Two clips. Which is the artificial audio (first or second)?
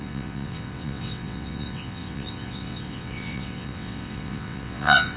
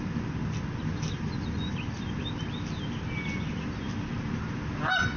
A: first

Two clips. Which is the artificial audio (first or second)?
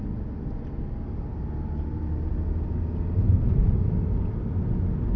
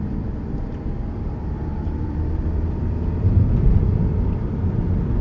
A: second